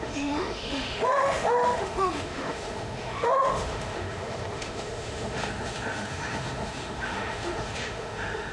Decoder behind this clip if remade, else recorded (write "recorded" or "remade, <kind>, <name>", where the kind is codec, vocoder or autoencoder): remade, autoencoder, DAC-VAE